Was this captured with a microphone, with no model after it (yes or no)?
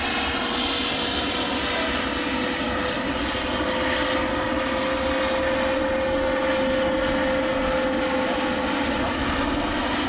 yes